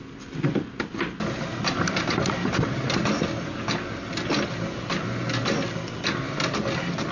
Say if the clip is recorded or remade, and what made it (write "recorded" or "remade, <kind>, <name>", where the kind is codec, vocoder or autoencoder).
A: recorded